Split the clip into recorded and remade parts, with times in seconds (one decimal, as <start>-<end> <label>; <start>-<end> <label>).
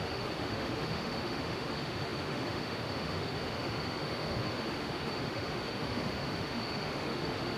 0.0-7.6 remade